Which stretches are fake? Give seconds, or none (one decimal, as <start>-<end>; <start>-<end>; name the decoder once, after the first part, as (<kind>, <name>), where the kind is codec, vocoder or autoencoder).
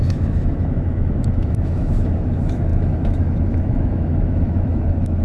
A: 0.0-5.2 (autoencoder, DAC-VAE)